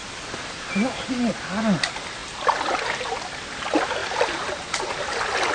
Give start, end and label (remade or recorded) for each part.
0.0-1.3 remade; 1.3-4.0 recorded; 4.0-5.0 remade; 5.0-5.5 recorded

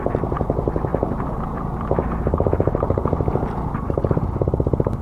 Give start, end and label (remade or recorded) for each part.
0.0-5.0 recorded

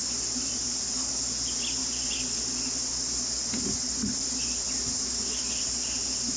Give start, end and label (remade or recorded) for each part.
0.0-0.5 recorded; 0.5-1.1 remade; 1.1-6.4 recorded